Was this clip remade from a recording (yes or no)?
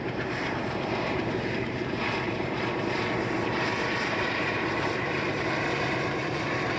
yes